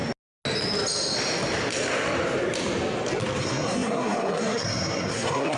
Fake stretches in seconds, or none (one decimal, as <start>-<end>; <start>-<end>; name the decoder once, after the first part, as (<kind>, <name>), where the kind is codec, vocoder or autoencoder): 3.4-5.6 (codec, SNAC)